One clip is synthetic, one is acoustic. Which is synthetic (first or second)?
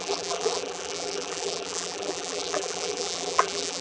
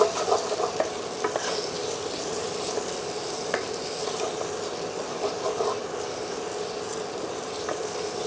first